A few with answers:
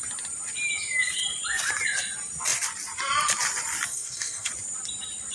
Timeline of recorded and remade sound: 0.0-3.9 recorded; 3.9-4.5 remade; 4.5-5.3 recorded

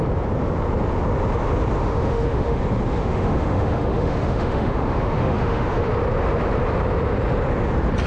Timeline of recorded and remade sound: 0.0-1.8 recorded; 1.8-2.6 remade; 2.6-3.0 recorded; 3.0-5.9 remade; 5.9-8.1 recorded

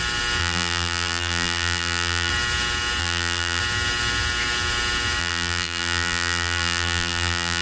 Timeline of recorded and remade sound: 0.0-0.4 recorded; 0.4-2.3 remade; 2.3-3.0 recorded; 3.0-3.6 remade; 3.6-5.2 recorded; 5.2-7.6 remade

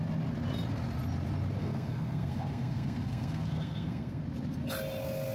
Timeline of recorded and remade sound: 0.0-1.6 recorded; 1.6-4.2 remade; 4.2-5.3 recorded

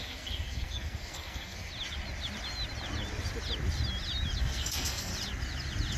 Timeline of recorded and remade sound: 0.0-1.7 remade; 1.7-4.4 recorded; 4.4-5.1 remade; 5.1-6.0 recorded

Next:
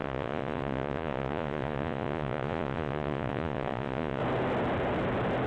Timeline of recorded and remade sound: 0.0-4.2 remade; 4.2-5.5 recorded